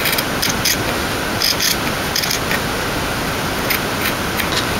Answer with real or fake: real